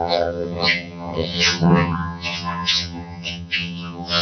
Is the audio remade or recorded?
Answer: remade